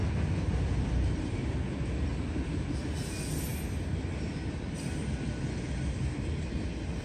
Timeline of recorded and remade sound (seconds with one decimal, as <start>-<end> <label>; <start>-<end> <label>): 0.0-7.0 recorded